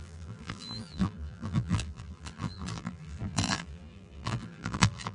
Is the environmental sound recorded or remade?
remade